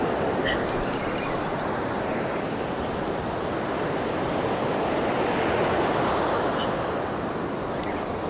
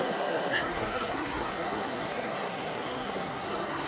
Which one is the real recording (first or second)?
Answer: first